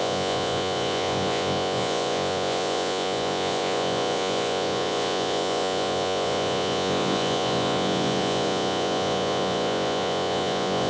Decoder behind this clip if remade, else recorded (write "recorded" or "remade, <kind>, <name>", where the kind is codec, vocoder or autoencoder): remade, vocoder, Vocos